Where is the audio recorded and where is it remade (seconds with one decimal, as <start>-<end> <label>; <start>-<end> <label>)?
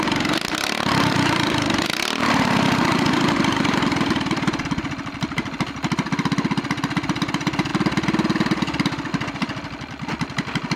0.0-7.7 remade; 7.7-9.1 recorded; 9.1-10.8 remade